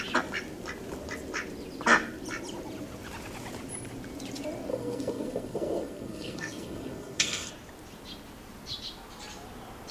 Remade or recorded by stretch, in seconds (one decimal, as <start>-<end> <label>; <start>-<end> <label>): 0.0-4.7 recorded; 4.7-7.5 remade; 7.5-9.9 recorded